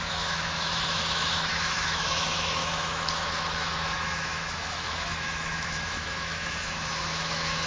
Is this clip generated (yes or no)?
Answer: yes